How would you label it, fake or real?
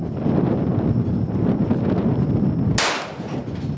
real